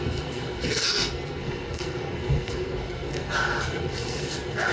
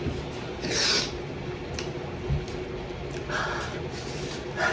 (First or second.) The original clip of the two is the second